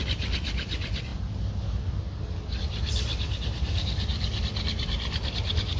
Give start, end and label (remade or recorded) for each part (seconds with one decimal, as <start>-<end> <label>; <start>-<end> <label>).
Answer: 0.0-5.8 recorded